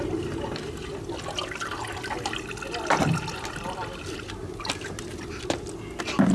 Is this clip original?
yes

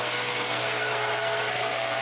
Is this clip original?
no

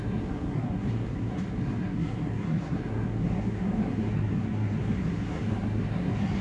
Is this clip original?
no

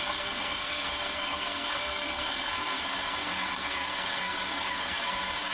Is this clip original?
no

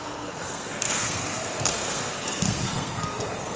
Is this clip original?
no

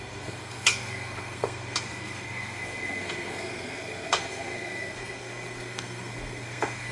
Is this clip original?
no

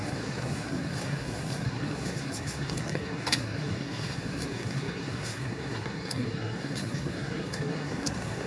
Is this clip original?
no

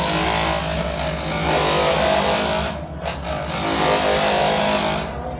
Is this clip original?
yes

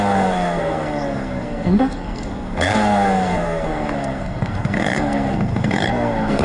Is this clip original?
no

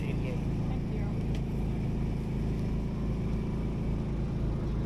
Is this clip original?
yes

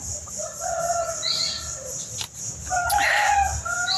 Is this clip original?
yes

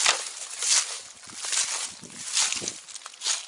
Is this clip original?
yes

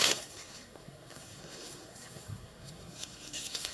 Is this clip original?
no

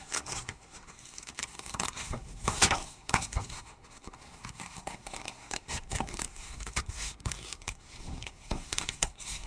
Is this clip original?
no